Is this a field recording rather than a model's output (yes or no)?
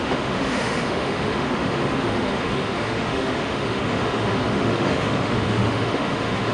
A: no